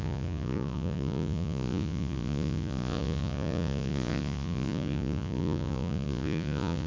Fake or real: fake